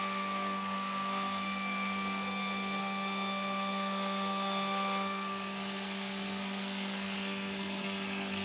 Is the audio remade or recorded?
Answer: remade